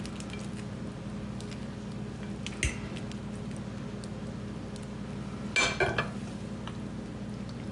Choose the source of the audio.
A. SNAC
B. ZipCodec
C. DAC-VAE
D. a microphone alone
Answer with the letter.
D